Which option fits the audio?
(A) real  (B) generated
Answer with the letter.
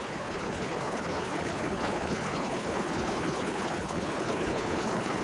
B